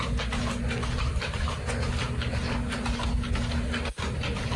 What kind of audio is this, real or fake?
real